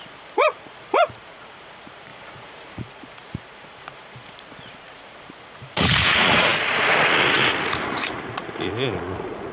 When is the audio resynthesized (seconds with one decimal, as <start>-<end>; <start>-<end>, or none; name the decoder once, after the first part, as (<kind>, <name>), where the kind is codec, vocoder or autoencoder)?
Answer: 0.0-9.5 (vocoder, Vocos)